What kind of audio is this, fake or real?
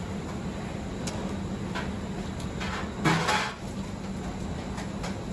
real